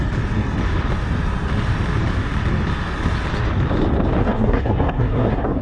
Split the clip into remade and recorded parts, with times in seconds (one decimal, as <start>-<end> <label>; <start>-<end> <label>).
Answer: 0.0-4.2 recorded; 4.2-5.6 remade